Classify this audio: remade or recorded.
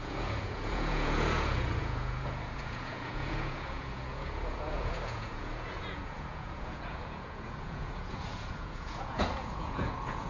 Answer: remade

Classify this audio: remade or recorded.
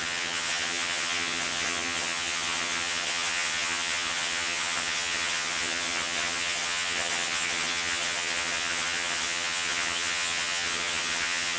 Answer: remade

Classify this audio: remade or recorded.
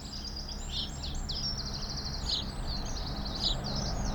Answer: recorded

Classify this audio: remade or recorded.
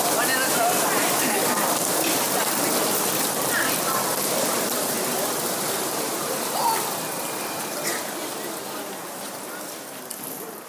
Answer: remade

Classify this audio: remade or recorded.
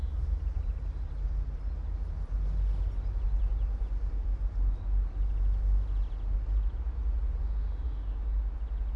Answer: recorded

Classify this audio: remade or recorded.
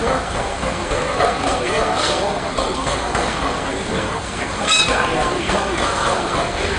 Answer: remade